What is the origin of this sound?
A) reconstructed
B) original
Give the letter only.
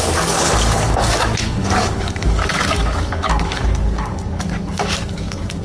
A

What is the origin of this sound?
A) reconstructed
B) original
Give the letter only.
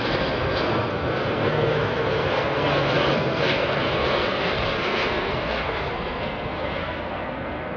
A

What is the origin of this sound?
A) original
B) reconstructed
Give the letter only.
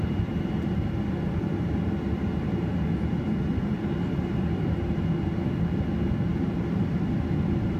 A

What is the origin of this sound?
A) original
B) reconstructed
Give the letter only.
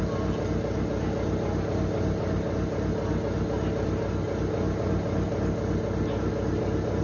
A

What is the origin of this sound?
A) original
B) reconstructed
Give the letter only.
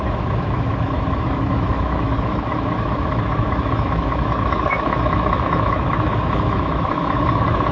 B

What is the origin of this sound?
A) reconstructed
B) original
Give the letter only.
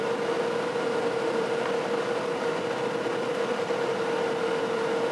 A